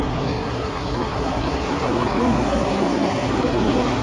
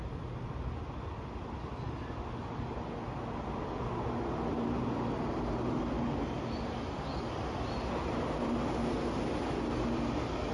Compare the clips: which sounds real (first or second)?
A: second